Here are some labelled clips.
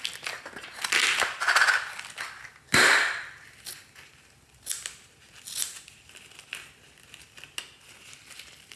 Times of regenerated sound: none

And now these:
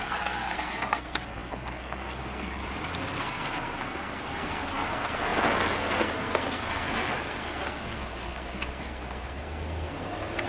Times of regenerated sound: 0.0-2.6 (codec, SNAC); 3.2-10.5

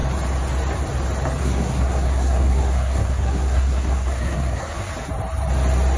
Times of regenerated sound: 1.4-4.9 (codec, SNAC)

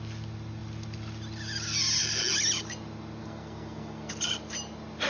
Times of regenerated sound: 3.2-4.1 (codec, SNAC)

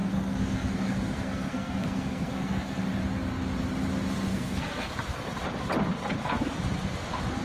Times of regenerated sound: 0.0-2.8 (codec, SNAC); 4.3-4.9

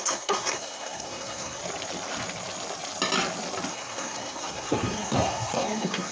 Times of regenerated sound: 0.0-1.6 (codec, SNAC); 3.7-6.1

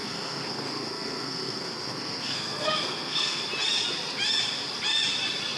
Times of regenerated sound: 0.0-3.4 (codec, SNAC)

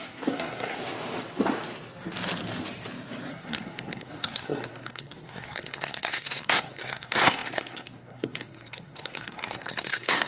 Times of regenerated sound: 0.0-0.8 (codec, SNAC); 3.3-10.3